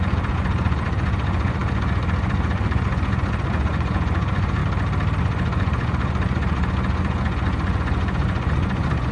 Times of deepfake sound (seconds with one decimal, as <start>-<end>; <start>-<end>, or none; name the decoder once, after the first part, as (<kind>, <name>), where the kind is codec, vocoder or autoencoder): 0.0-4.6 (vocoder, Vocos); 5.2-9.1